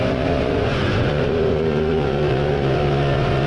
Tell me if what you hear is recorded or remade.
remade